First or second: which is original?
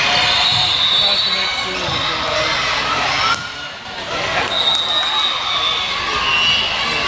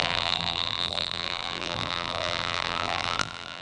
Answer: first